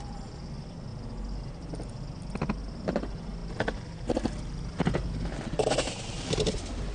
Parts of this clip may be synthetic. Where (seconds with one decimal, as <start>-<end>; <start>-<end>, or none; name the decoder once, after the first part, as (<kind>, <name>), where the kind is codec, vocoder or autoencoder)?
none